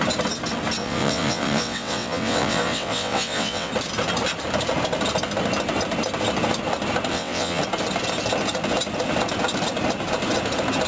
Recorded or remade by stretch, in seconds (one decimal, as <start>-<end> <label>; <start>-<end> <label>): 0.0-0.8 recorded; 0.8-3.7 remade; 3.7-7.1 recorded; 7.1-7.6 remade; 7.6-10.9 recorded